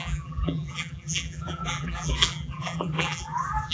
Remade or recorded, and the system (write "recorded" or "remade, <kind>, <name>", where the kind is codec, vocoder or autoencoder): remade, vocoder, BigVGAN v2